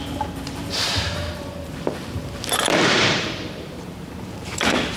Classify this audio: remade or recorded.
remade